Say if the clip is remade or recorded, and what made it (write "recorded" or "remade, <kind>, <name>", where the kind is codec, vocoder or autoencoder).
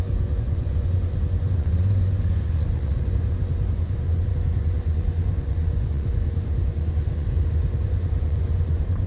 remade, vocoder, Vocos